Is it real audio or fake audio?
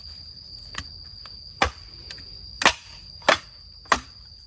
real